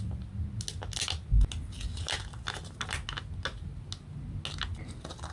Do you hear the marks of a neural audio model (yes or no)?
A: no